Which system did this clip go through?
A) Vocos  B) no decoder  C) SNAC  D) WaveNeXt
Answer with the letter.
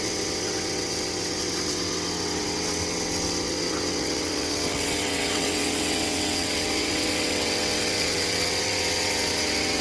D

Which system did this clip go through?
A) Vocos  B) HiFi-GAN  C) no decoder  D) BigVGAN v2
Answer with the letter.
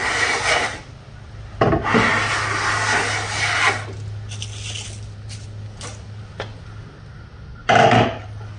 C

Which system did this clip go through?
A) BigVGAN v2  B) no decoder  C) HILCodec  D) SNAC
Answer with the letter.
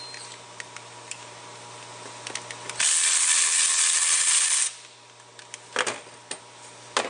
B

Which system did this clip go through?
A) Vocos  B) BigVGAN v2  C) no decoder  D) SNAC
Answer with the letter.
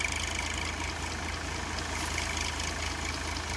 C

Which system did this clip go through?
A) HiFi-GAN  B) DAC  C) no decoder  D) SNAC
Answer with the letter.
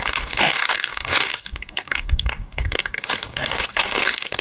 B